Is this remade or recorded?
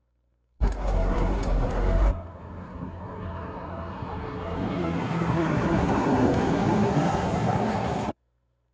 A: remade